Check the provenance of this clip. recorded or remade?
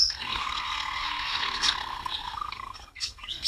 remade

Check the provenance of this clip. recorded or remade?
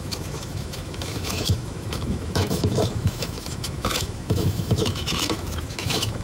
remade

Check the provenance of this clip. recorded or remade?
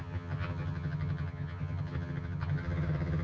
remade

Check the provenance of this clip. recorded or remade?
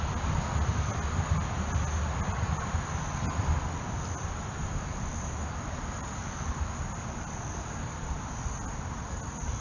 recorded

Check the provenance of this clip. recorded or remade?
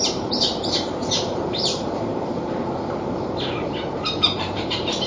remade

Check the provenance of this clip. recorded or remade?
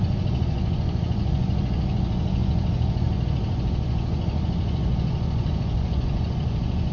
remade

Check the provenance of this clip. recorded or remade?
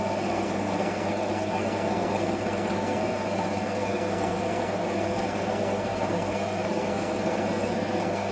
remade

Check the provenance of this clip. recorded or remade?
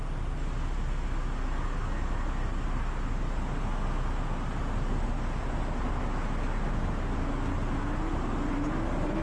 recorded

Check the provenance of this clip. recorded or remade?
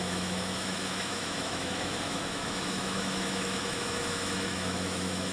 remade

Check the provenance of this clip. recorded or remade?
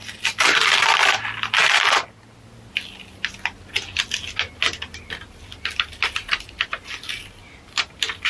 recorded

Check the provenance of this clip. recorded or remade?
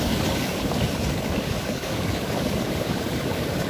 remade